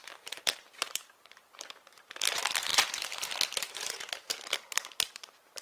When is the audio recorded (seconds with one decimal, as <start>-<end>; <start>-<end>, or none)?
none